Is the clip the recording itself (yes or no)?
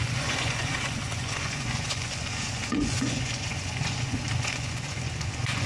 no